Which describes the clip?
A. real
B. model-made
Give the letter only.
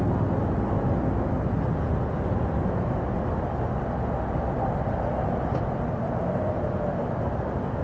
A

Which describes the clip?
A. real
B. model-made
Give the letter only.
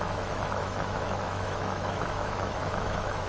B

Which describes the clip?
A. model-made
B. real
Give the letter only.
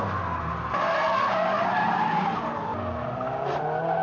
B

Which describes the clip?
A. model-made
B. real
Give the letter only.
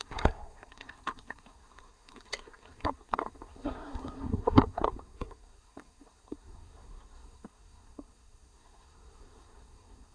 A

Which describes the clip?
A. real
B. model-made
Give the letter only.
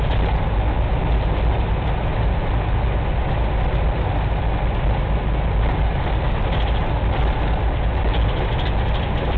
A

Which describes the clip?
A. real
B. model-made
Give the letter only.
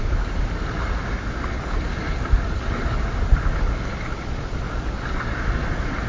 A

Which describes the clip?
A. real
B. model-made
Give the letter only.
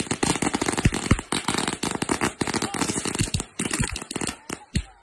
A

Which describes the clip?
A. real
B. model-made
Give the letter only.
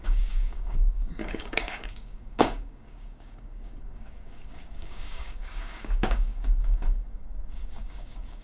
B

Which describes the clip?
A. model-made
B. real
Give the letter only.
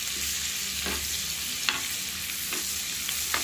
B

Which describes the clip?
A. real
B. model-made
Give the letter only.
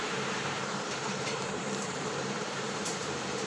B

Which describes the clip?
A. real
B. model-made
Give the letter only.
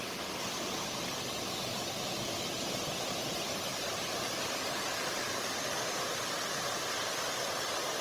A